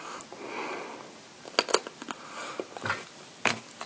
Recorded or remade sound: recorded